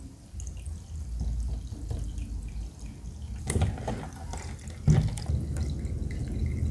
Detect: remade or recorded recorded